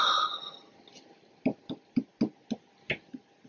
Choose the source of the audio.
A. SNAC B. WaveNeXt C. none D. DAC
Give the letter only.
C